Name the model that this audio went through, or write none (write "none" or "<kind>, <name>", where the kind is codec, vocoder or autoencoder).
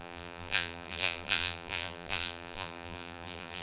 vocoder, BigVGAN v2